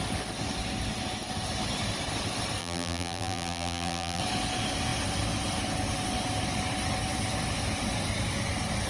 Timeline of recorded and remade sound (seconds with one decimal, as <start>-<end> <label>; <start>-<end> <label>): 0.0-2.6 recorded; 2.6-4.2 remade; 4.2-8.9 recorded